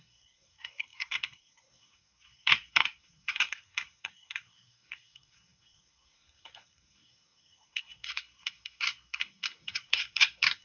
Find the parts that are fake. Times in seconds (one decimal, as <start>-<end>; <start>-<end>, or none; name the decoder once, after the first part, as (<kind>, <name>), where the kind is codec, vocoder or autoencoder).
0.0-10.6 (codec, SNAC)